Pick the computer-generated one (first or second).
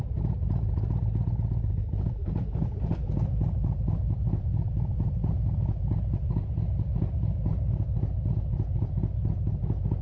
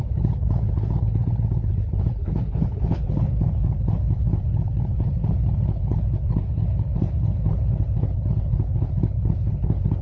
second